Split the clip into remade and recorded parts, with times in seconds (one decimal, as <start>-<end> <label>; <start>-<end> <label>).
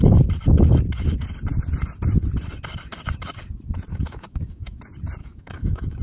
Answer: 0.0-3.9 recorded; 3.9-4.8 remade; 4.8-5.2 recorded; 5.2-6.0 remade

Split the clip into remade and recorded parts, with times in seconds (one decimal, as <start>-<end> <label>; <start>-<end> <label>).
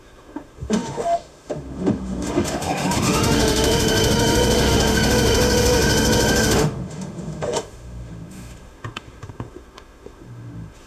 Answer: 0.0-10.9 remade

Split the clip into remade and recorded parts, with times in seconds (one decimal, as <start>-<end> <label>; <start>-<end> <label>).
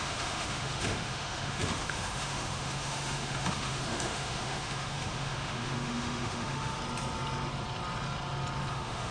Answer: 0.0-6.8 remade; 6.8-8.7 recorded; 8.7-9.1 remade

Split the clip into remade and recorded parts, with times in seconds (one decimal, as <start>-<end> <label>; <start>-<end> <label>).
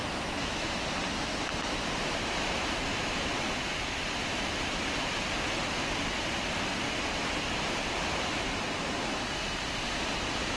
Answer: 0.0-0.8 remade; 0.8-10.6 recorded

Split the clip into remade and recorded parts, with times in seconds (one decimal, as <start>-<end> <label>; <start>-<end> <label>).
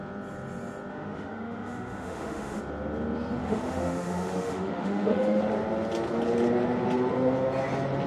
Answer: 0.0-0.9 recorded; 0.9-2.6 remade; 2.6-3.4 recorded; 3.4-5.4 remade; 5.4-8.1 recorded